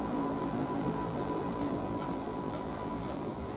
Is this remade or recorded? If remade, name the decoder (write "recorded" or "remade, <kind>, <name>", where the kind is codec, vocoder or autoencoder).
remade, vocoder, BigVGAN v2